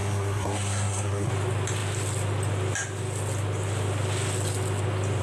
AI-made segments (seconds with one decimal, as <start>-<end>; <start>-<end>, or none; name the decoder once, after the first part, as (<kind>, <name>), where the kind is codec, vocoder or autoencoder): 0.0-1.3 (codec, SNAC)